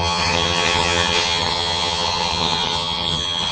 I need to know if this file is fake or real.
fake